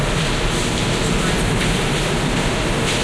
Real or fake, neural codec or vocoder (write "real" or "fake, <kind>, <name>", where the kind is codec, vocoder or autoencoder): real